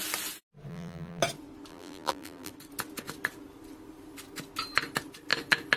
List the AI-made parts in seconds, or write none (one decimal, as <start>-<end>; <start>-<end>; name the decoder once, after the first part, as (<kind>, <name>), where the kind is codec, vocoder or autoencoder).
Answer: 0.7-1.2 (vocoder, BigVGAN v2); 1.7-2.5